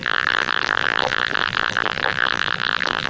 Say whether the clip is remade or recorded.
remade